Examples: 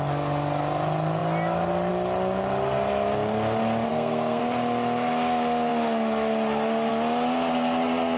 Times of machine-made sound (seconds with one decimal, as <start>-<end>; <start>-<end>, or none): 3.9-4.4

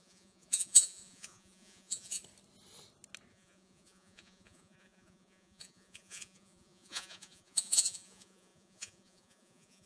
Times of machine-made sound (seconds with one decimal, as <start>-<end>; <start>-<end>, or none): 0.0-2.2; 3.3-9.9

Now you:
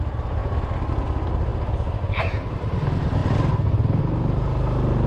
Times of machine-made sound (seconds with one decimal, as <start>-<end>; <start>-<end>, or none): none

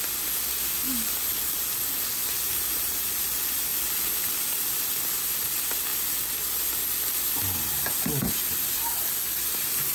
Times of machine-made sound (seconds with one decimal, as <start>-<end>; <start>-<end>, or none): 2.2-3.2; 3.7-4.3

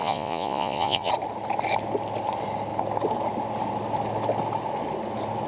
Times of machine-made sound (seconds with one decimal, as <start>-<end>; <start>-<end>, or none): 0.0-1.1

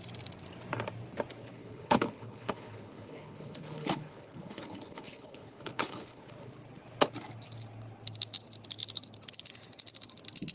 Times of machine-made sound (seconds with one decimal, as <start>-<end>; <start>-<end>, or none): 1.4-6.5

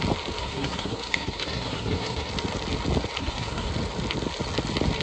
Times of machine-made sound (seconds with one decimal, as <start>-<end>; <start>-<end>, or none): 0.4-2.3; 3.2-3.7

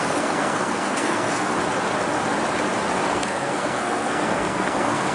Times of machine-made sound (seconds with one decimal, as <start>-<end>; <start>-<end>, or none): 0.0-1.5; 3.1-5.1